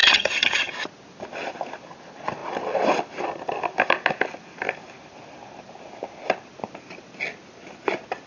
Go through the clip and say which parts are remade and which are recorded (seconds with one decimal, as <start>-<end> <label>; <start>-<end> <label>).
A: 0.0-0.7 remade; 0.7-8.3 recorded